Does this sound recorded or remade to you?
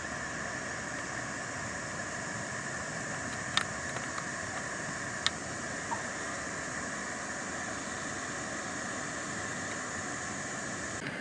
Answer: recorded